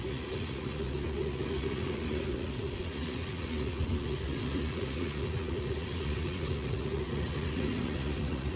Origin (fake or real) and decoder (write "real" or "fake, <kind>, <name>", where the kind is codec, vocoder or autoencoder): fake, vocoder, Vocos